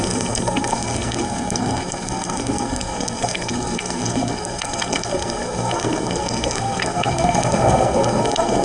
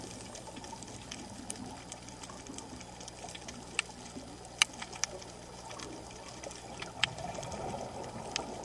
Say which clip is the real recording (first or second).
second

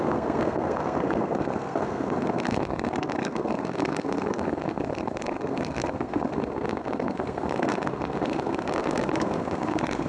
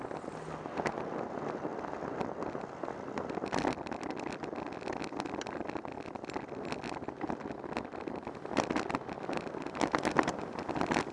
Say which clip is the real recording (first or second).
second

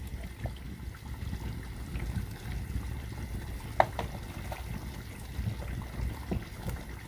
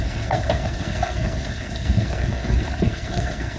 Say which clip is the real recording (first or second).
first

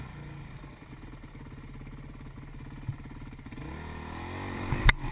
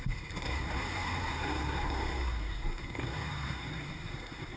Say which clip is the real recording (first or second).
first